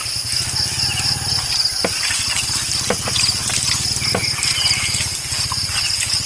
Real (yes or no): yes